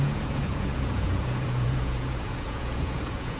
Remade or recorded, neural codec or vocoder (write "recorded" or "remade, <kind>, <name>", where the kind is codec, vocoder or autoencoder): remade, vocoder, Vocos